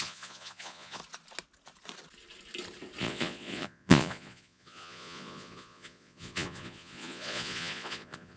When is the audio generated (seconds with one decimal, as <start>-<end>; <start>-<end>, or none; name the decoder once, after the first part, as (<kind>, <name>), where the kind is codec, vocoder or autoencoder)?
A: 0.0-1.0 (vocoder, Vocos); 3.0-8.4